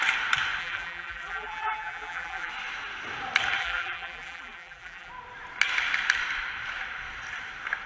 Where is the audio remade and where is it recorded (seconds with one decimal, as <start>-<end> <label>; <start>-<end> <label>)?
0.0-0.6 recorded; 0.6-2.5 remade; 2.5-3.6 recorded; 3.6-5.1 remade; 5.1-7.9 recorded